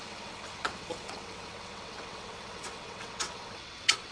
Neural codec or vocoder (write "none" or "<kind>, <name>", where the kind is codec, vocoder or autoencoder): vocoder, WaveNeXt